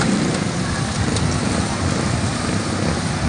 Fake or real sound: real